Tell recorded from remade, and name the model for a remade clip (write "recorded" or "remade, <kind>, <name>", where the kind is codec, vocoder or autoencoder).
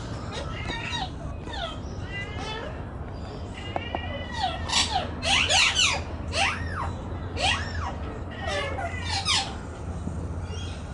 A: recorded